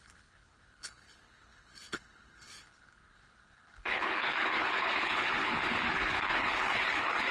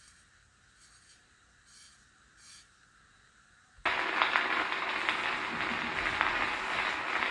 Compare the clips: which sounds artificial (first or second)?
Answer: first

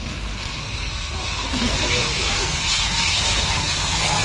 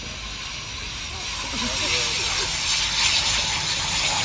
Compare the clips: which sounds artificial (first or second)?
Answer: first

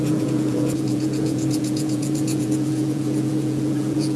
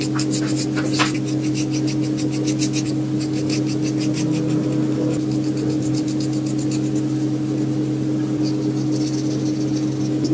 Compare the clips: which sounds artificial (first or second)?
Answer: first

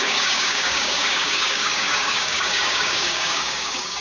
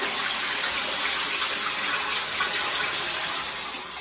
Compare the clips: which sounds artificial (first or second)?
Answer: first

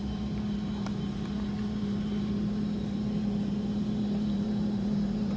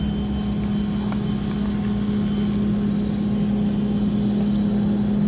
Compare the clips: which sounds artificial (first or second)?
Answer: first